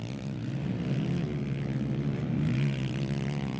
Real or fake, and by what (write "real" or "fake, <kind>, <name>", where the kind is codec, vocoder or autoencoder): real